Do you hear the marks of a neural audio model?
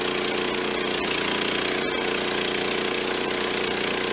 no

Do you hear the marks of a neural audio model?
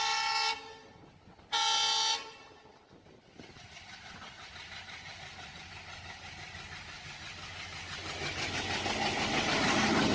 no